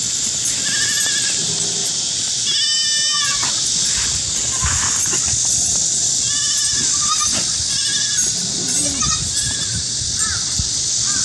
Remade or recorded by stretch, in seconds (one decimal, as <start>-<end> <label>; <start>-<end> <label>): 0.0-11.2 recorded